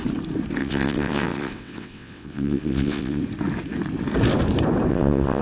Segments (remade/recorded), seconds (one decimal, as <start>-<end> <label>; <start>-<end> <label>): 0.0-0.6 recorded; 0.6-3.2 remade; 3.2-4.9 recorded; 4.9-5.4 remade